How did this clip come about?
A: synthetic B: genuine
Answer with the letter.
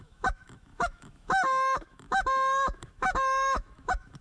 A